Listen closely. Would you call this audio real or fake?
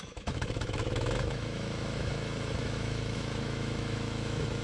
fake